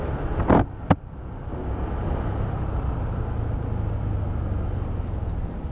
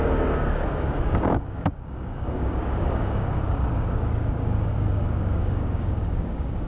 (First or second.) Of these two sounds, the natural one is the first